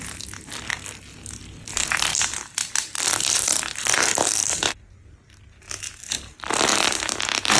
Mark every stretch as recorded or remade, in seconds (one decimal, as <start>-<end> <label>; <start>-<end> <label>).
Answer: 0.0-1.4 recorded; 1.4-5.2 remade; 5.2-7.6 recorded